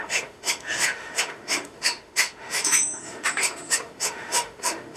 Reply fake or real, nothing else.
fake